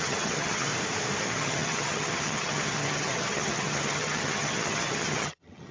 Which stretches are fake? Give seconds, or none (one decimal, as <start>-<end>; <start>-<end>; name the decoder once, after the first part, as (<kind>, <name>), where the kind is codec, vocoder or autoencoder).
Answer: 0.0-0.7 (vocoder, HiFi-GAN); 1.2-5.7